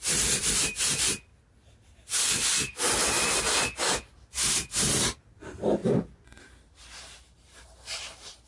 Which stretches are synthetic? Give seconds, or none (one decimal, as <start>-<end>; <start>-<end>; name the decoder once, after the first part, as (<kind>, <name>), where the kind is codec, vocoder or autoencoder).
0.0-1.3 (vocoder, BigVGAN v2); 5.0-5.8; 6.4-8.5

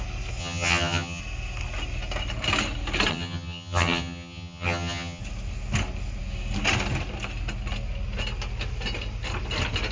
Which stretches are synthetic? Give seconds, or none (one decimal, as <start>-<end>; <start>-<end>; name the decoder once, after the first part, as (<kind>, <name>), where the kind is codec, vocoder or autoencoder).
0.4-1.2 (vocoder, HiFi-GAN); 3.1-5.2

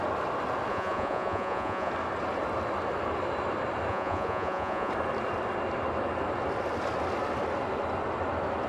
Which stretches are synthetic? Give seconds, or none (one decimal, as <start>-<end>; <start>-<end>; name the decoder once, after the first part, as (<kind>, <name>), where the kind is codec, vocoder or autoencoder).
0.7-1.9 (vocoder, Vocos); 3.9-4.9

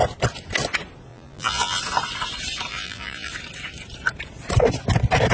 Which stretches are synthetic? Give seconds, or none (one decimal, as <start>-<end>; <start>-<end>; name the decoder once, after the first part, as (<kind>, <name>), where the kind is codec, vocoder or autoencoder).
1.1-1.8 (vocoder, BigVGAN v2); 2.7-3.3